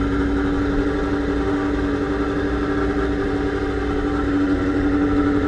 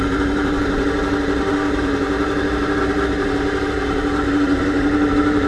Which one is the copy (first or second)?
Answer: second